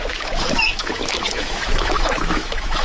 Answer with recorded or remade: remade